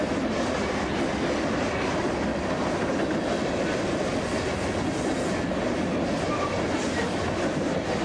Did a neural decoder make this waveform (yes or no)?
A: no